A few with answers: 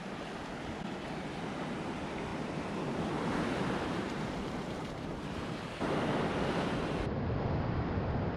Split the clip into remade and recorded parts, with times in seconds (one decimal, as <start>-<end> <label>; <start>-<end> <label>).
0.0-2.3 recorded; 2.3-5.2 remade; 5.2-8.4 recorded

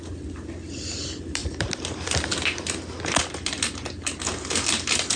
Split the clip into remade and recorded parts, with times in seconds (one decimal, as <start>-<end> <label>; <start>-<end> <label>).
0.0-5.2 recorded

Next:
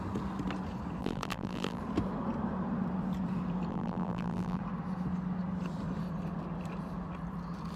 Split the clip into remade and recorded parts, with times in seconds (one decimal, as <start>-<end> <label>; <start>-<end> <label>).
0.0-1.0 recorded; 1.0-1.8 remade; 1.8-3.7 recorded; 3.7-4.6 remade; 4.6-7.8 recorded

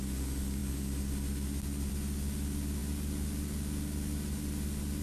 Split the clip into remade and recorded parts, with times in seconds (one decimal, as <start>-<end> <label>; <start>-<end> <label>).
0.0-5.0 recorded

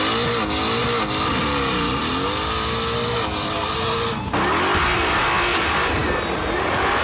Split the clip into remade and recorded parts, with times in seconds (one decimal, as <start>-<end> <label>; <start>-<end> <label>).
0.0-7.0 recorded

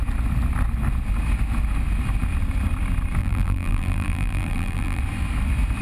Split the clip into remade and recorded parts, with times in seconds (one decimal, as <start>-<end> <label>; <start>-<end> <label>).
0.0-3.2 recorded; 3.2-5.0 remade; 5.0-5.8 recorded